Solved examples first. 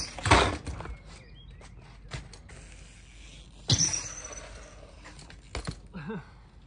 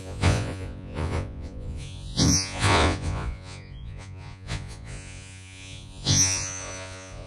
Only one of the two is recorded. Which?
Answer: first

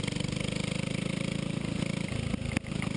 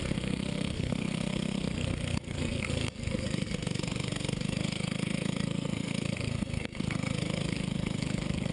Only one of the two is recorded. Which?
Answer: first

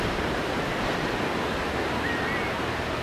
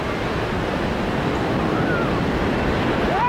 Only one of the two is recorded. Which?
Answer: second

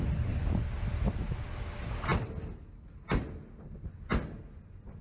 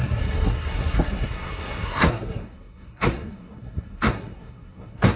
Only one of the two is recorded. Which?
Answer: first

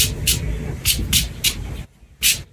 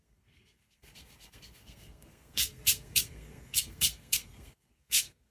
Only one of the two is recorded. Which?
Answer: first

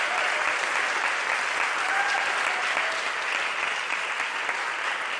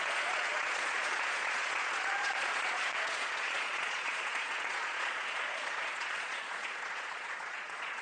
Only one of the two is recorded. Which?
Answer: first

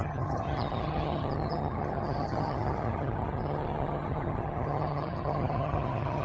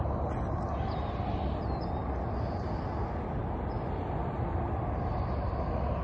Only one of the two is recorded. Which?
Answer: second